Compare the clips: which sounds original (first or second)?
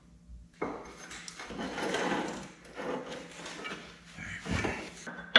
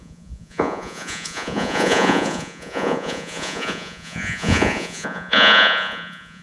first